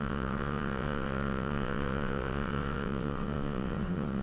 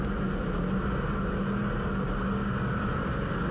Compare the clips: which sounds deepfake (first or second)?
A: first